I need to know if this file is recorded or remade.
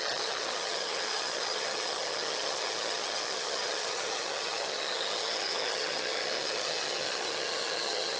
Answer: remade